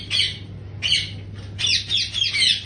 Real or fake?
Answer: real